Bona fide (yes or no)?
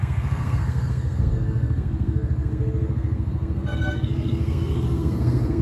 no